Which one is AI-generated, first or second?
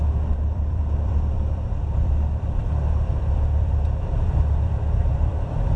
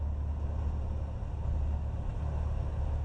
first